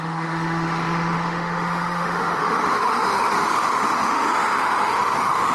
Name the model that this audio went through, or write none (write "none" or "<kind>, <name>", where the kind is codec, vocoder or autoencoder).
autoencoder, DAC-VAE